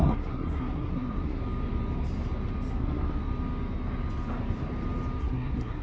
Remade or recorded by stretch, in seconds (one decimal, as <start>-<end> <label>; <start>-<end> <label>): 0.0-1.4 remade; 1.4-2.7 recorded; 2.7-3.3 remade; 3.3-5.2 recorded; 5.2-5.8 remade